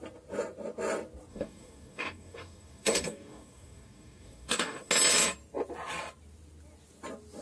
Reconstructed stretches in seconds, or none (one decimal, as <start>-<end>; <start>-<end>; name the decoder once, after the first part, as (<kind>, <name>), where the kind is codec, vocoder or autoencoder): 1.3-4.9 (codec, DAC)